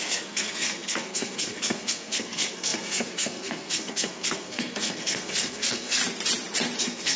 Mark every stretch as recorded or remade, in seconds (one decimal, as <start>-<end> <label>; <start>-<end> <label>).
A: 0.0-6.0 remade; 6.0-6.8 recorded; 6.8-7.2 remade